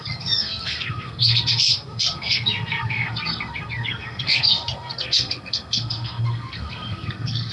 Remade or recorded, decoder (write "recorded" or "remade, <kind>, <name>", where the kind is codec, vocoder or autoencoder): remade, codec, SNAC